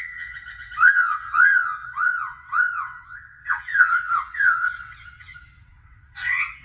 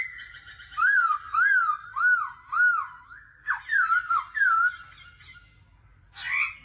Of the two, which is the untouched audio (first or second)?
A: second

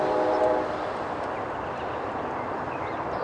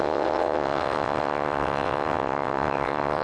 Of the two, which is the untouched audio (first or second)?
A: first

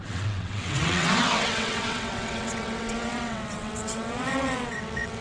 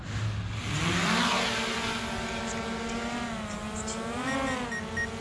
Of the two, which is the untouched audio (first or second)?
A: second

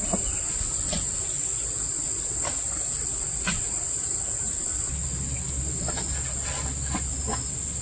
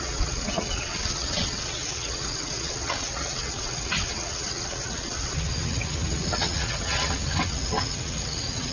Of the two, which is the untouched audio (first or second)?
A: first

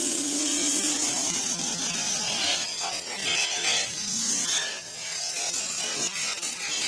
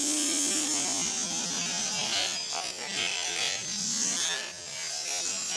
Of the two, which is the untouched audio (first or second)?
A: second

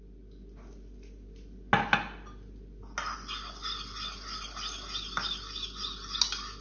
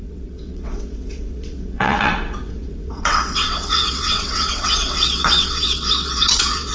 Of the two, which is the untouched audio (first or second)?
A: first